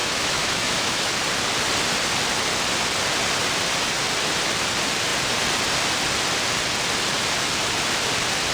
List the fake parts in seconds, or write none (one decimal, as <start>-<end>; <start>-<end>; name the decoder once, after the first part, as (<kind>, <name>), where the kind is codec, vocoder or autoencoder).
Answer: 0.0-1.1 (autoencoder, DAC-VAE)